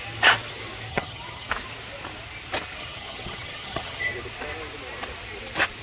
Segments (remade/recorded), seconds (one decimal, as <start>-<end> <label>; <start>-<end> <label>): 0.0-0.9 recorded; 0.9-1.5 remade; 1.5-2.8 recorded; 2.8-4.1 remade; 4.1-5.8 recorded